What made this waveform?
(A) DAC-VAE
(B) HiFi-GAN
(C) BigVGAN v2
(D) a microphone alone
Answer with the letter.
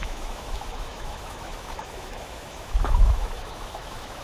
A